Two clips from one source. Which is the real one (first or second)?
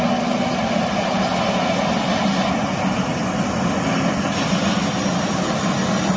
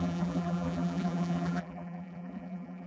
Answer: first